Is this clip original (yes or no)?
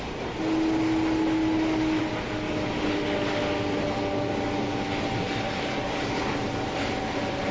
yes